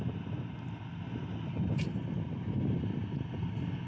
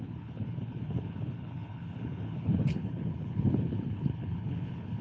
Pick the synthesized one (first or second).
second